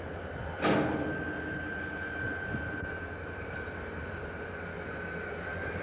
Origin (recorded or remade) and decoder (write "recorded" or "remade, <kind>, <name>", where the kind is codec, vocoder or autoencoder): recorded